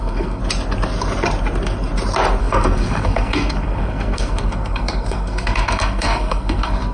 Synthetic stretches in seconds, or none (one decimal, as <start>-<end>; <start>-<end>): 0.0-0.4; 2.4-6.9

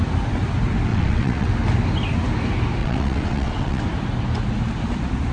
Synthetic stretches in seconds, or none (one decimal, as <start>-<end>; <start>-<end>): 0.9-1.5; 2.8-3.8

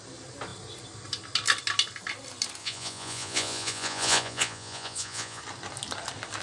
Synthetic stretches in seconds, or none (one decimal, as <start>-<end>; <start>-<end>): 2.6-5.4

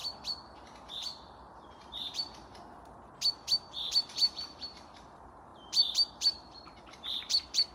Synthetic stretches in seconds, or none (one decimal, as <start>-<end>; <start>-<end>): 0.9-2.5; 3.6-7.7

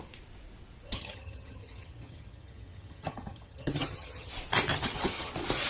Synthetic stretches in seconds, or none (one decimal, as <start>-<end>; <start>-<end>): 0.9-4.3; 4.7-5.3

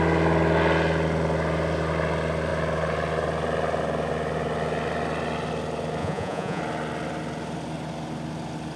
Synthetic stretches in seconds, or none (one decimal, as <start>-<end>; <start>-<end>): 6.0-6.6

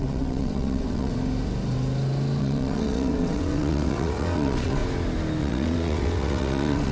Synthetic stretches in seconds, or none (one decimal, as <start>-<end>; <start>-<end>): 0.0-1.1; 2.4-4.8; 5.4-6.9

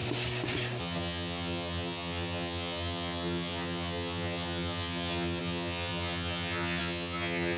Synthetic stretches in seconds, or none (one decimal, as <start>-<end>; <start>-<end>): 0.8-7.6